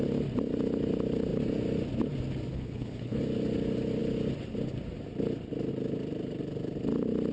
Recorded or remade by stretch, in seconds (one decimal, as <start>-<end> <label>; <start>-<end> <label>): 0.0-2.5 recorded; 2.5-3.2 remade; 3.2-7.3 recorded